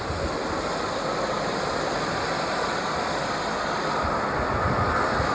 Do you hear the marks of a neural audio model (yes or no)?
no